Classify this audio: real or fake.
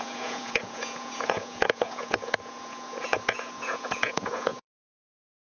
fake